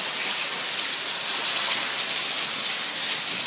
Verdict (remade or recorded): remade